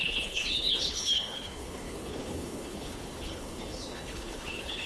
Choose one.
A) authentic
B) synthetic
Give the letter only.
B